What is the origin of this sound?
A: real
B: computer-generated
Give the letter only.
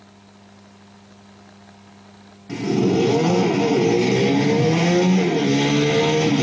A